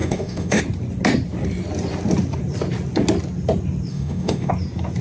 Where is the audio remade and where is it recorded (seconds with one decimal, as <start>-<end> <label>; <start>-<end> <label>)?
0.0-0.6 remade; 0.6-3.9 recorded; 3.9-4.5 remade; 4.5-5.0 recorded